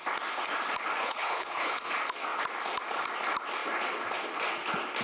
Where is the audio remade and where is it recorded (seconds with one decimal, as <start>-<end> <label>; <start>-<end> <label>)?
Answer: 0.0-1.0 recorded; 1.0-1.9 remade; 1.9-5.0 recorded